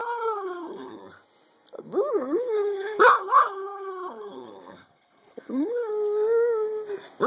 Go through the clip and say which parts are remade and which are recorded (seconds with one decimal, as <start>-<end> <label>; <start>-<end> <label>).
0.0-1.0 remade; 1.0-2.1 recorded; 2.1-5.9 remade; 5.9-7.3 recorded